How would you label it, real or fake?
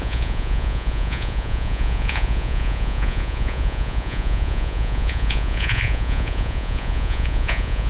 fake